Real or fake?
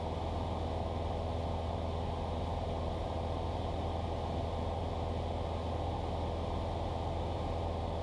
real